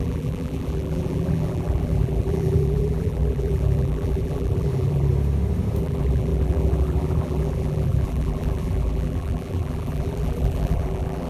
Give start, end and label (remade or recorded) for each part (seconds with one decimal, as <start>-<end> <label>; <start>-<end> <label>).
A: 0.0-5.1 remade; 5.1-5.8 recorded; 5.8-11.3 remade